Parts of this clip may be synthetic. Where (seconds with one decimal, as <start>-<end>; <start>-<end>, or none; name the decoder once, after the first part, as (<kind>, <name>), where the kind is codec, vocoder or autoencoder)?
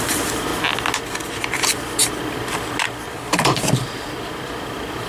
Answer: 0.0-0.5 (vocoder, BigVGAN v2); 1.5-2.0; 3.1-5.1